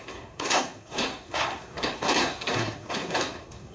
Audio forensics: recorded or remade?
remade